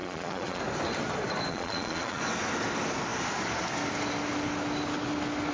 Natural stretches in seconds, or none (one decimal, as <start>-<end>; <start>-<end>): 0.6-1.5; 2.2-5.5